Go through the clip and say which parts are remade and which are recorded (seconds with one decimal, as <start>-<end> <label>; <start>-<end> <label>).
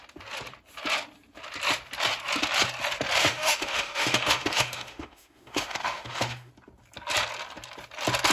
0.0-3.2 recorded; 3.2-6.5 remade; 6.5-8.3 recorded